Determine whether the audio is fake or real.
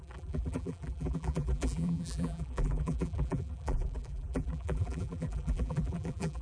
fake